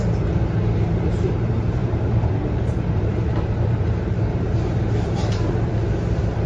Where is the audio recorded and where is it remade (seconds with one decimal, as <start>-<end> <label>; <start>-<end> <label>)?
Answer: 0.0-1.8 recorded; 1.8-5.7 remade; 5.7-6.5 recorded